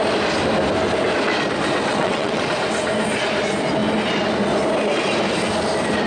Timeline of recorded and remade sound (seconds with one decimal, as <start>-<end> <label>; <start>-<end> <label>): 0.0-1.9 recorded; 1.9-2.4 remade; 2.4-6.1 recorded